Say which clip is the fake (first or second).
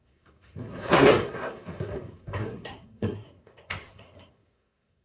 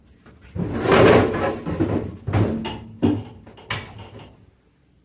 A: first